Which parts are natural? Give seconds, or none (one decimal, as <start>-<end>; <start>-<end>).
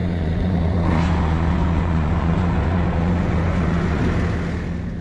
4.0-5.0